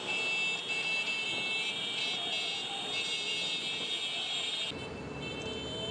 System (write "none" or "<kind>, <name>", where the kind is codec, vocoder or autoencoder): none